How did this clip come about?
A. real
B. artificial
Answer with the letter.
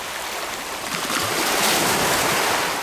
A